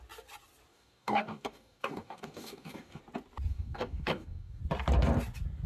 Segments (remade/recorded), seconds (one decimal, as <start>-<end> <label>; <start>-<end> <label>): 0.0-0.7 recorded; 0.7-3.0 remade; 3.0-3.5 recorded; 3.5-4.6 remade; 4.6-5.7 recorded